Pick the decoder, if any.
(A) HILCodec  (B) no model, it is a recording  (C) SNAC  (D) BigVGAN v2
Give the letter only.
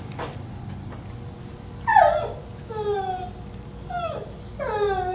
B